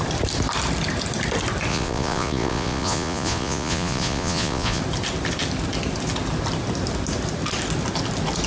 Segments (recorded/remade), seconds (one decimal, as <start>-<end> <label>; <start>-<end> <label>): 0.0-1.7 recorded; 1.7-4.8 remade; 4.8-8.5 recorded